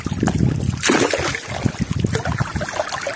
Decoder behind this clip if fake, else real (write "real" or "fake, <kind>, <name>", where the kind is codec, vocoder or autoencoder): real